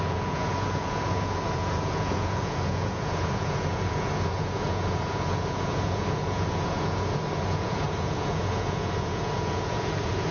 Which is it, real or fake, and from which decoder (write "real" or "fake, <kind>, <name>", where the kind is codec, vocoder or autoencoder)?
fake, vocoder, Vocos